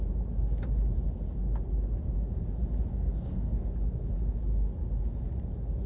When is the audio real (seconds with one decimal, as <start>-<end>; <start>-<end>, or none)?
0.0-2.9; 3.7-5.9